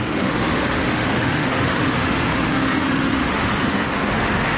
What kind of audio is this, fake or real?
fake